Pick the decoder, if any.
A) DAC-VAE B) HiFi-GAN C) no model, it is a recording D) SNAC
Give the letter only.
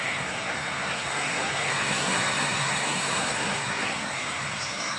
D